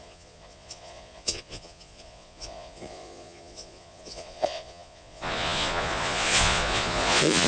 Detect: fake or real fake